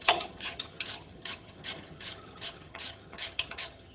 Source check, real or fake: fake